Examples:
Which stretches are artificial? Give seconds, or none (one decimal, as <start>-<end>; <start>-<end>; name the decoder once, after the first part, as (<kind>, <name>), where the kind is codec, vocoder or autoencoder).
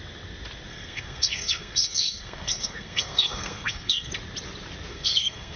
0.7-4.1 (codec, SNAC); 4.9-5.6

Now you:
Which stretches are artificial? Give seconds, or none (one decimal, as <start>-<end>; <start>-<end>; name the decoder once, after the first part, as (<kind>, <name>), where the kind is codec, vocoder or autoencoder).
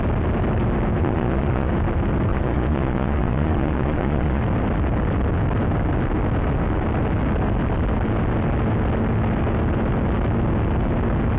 1.0-1.7 (vocoder, Vocos); 2.3-4.4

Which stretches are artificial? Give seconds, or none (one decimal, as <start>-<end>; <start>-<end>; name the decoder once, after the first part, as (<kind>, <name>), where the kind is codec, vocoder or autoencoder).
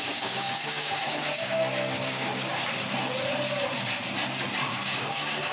0.0-2.5 (codec, DAC); 4.7-5.5